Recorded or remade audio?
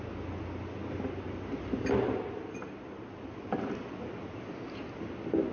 recorded